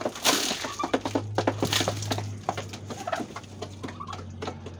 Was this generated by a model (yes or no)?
no